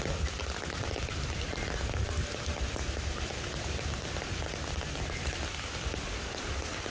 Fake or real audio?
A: real